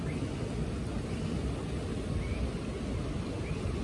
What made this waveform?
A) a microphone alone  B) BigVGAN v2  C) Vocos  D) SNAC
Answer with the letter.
A